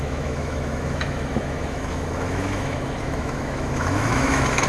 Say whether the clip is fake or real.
fake